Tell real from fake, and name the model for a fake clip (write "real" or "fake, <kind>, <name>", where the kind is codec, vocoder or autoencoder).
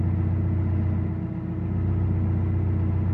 real